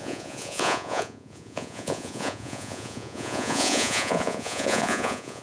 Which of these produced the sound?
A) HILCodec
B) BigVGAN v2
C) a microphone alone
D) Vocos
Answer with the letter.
D